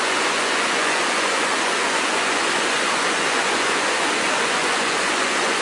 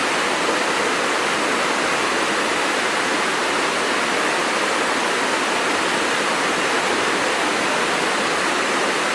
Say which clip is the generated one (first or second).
first